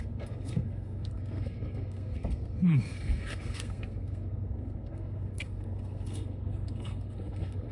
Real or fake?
fake